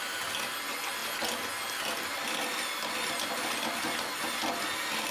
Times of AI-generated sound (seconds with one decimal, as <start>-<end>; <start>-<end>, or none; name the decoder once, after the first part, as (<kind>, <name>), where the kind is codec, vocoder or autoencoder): none